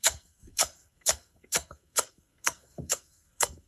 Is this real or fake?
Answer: fake